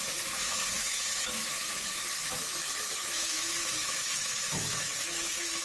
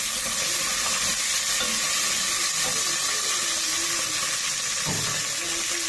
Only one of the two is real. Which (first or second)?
second